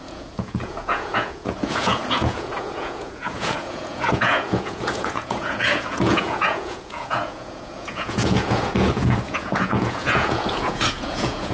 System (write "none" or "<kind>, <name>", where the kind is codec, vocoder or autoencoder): vocoder, Vocos